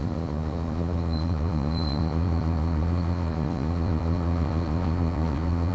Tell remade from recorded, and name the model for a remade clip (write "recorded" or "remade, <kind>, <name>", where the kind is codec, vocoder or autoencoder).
remade, vocoder, Vocos